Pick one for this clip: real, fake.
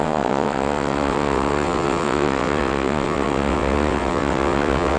fake